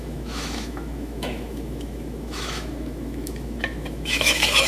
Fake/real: fake